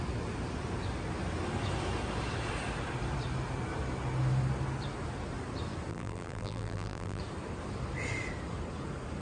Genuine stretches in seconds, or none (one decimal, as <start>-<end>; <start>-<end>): 0.0-5.9; 7.2-9.2